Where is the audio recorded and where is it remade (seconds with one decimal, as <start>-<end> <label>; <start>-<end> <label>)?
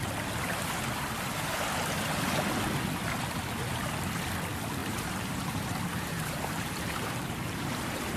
0.0-4.8 recorded; 4.8-8.2 remade